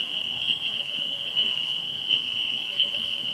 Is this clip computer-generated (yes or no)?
yes